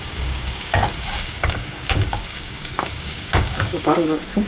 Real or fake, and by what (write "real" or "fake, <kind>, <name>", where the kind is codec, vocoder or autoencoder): fake, codec, DAC